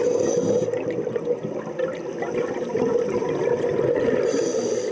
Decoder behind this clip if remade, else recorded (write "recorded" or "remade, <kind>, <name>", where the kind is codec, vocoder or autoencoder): recorded